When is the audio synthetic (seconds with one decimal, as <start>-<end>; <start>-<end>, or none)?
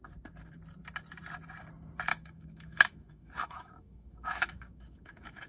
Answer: 2.1-5.5